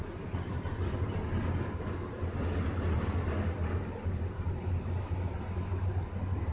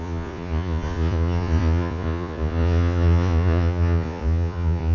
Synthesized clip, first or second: second